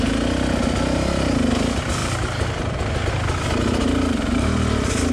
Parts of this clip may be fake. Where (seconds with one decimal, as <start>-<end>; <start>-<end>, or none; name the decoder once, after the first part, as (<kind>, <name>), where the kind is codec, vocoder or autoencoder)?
none